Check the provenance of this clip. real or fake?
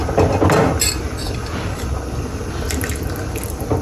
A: real